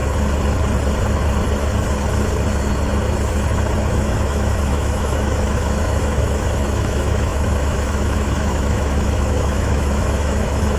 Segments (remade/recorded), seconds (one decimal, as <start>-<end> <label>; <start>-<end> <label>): 0.0-3.9 recorded; 3.9-10.8 remade